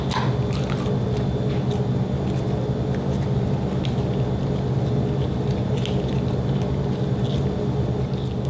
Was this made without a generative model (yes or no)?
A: yes